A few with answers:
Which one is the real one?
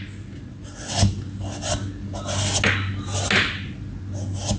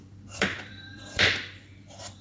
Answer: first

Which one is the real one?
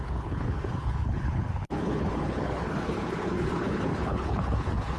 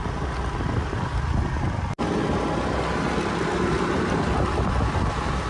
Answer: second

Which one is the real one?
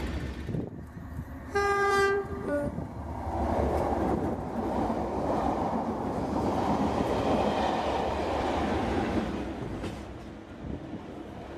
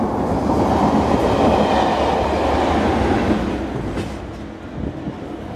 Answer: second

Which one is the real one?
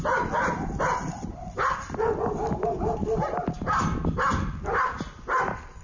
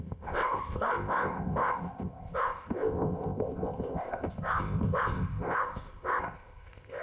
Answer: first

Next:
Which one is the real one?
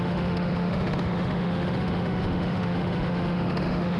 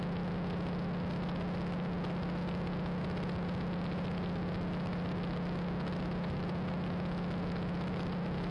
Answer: second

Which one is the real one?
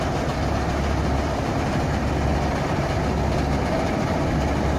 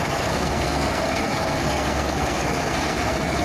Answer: first